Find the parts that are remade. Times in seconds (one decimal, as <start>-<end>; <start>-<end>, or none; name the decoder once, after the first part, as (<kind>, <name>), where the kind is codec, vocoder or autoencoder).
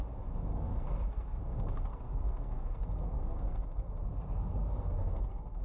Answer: 0.5-3.9 (codec, SNAC); 4.4-5.6